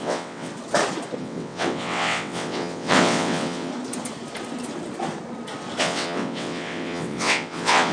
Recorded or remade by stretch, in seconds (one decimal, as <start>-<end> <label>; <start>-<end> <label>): 0.0-0.5 remade; 0.5-1.2 recorded; 1.2-3.7 remade; 3.7-5.8 recorded; 5.8-7.9 remade